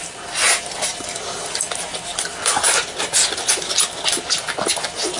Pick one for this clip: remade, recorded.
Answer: recorded